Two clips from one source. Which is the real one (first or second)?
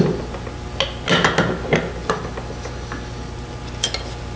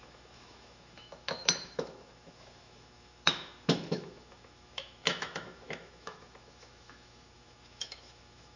first